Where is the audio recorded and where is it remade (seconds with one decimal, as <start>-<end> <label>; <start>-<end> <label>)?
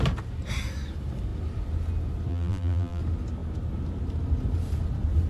0.0-2.3 recorded; 2.3-3.0 remade; 3.0-5.3 recorded